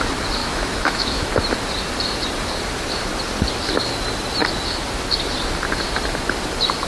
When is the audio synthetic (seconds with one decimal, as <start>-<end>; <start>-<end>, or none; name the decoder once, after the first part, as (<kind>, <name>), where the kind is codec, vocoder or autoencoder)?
0.4-1.3 (autoencoder, DAC-VAE)